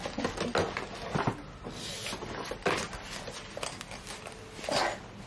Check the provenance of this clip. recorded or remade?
recorded